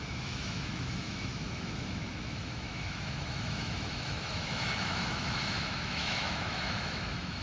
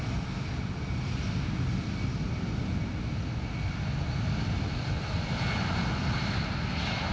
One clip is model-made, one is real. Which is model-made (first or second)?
first